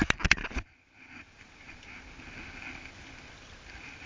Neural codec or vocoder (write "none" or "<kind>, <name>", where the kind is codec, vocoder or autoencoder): none